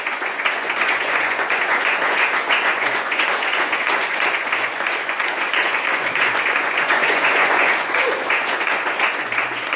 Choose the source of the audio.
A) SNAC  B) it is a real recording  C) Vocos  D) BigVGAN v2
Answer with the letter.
C